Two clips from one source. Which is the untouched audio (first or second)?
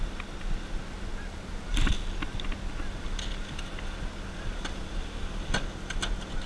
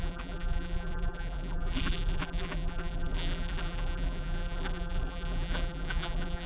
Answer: first